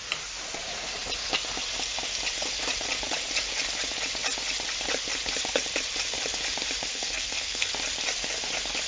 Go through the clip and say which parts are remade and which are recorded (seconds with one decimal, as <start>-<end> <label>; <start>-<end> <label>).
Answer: 0.0-6.9 recorded; 6.9-7.7 remade; 7.7-8.9 recorded